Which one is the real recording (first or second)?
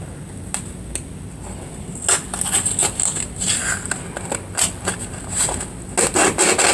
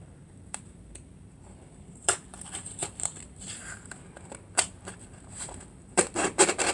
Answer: first